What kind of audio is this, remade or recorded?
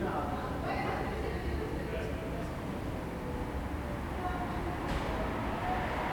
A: recorded